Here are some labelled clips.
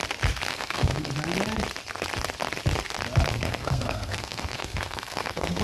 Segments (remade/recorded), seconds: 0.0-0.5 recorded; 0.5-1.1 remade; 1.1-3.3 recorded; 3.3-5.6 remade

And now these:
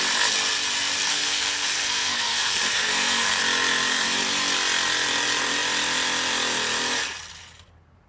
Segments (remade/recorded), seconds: 0.0-1.1 recorded; 1.1-3.4 remade; 3.4-8.1 recorded

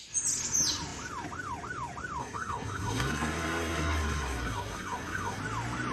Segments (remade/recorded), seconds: 0.0-2.2 recorded; 2.2-5.4 remade; 5.4-5.9 recorded